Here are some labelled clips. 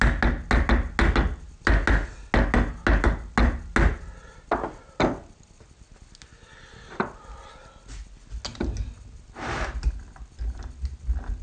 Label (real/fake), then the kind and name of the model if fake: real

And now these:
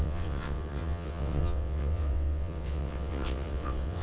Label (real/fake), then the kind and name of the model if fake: fake, vocoder, WaveNeXt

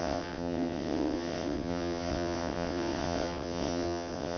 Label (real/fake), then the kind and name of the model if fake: fake, vocoder, WaveNeXt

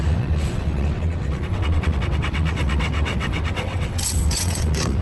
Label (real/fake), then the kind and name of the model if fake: fake, vocoder, WaveNeXt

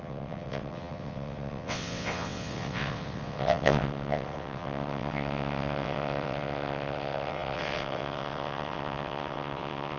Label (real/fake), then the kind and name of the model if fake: fake, vocoder, WaveNeXt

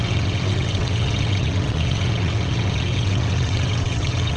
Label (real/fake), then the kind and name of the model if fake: fake, vocoder, WaveNeXt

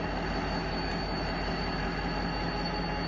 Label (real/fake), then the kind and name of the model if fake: real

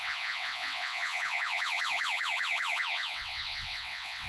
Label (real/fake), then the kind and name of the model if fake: fake, vocoder, WaveNeXt